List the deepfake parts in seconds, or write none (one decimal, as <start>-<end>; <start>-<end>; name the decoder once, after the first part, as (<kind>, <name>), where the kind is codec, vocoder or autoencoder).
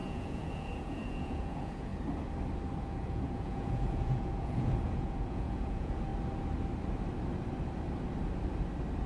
0.0-1.9 (vocoder, Vocos); 2.8-6.1